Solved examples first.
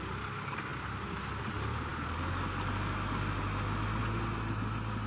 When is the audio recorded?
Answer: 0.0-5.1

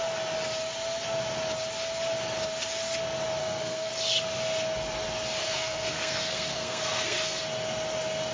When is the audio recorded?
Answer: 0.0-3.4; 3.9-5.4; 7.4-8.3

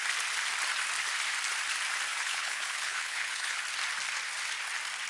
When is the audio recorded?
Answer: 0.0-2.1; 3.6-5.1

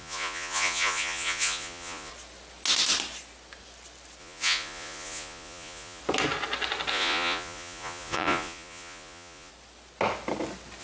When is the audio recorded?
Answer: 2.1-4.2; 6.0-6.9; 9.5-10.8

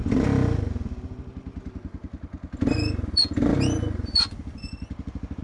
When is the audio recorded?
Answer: 0.0-5.4

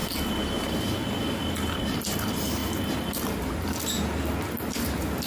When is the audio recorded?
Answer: 0.0-5.3